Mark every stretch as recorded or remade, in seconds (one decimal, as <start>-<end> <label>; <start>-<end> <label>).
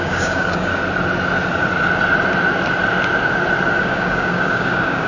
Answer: 0.0-0.7 remade; 0.7-3.8 recorded; 3.8-5.1 remade